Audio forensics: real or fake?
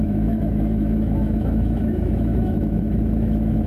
fake